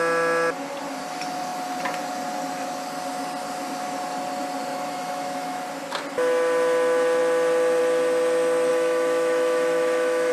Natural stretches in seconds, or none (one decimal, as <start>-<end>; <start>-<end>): 0.0-4.7; 5.6-8.7